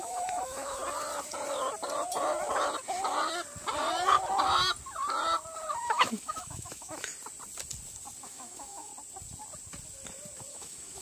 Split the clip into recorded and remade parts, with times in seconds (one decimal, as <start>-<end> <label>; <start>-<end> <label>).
0.0-0.8 remade; 0.8-5.8 recorded; 5.8-7.1 remade; 7.1-8.2 recorded; 8.2-8.9 remade; 8.9-10.5 recorded; 10.5-11.0 remade